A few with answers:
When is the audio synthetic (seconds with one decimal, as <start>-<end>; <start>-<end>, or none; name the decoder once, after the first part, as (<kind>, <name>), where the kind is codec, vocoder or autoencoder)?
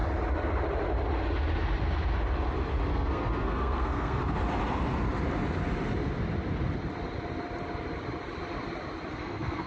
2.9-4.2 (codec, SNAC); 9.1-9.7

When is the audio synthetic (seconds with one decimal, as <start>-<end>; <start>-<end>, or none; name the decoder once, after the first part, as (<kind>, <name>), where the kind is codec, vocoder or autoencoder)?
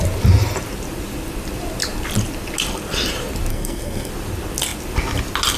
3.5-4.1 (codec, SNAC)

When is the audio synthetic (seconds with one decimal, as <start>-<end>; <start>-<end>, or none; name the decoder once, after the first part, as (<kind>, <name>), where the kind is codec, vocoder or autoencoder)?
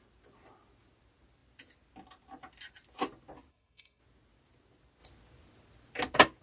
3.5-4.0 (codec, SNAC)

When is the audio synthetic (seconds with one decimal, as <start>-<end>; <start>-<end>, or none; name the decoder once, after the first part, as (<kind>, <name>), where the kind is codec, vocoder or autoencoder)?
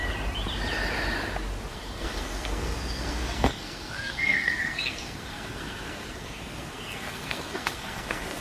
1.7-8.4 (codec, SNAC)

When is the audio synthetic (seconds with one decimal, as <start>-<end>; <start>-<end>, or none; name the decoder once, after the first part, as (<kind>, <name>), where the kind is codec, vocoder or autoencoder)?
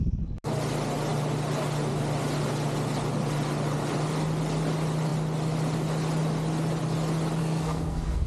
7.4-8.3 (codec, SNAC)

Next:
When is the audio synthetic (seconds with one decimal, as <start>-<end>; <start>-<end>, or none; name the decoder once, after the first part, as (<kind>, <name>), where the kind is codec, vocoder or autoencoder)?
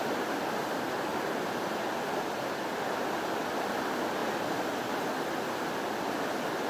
none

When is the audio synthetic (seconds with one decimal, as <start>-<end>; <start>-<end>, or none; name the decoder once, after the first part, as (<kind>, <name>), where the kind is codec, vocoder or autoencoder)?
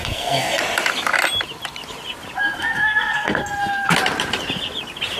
0.0-0.6 (codec, SNAC); 2.4-3.9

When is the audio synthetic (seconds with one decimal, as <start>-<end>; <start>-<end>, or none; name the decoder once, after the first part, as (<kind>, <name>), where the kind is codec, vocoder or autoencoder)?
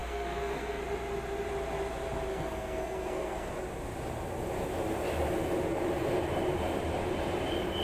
0.0-0.8 (codec, SNAC); 2.3-3.5